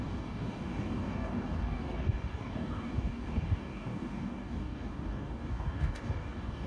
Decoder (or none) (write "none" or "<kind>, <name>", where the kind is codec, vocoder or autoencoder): codec, DAC